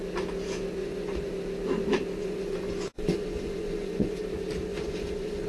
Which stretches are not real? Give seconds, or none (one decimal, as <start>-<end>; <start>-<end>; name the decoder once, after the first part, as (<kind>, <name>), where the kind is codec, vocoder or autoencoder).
0.8-1.3 (vocoder, Vocos); 2.2-4.2; 4.7-5.5